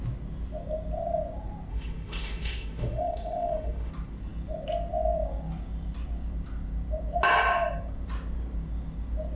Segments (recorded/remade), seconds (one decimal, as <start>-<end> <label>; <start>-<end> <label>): 0.0-1.7 recorded; 1.7-3.9 remade; 3.9-9.4 recorded